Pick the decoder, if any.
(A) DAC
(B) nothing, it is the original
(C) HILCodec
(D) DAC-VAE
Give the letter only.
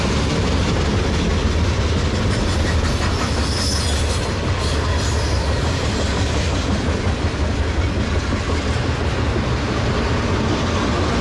B